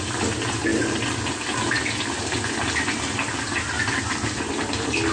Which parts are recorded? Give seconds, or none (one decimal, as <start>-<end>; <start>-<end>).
0.0-5.1